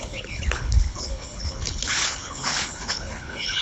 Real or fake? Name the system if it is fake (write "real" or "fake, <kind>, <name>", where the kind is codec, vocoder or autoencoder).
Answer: fake, codec, HILCodec